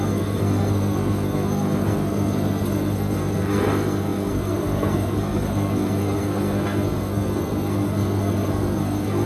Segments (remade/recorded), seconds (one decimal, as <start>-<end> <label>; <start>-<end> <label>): 0.0-9.3 remade